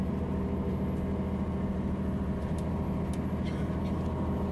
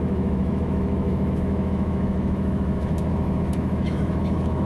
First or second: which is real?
first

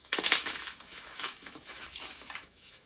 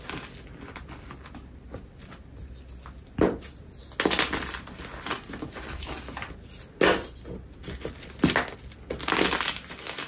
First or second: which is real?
second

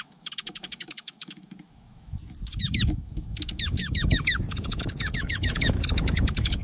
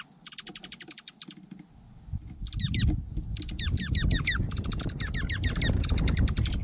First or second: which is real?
second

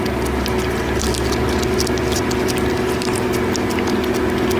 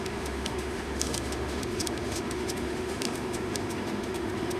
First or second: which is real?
first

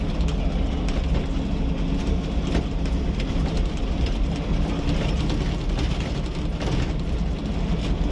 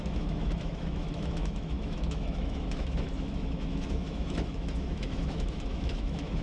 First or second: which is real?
first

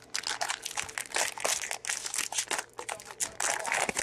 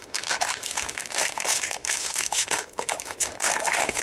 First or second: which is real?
first